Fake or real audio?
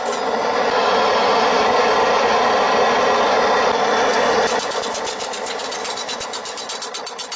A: real